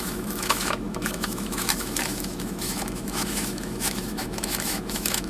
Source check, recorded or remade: remade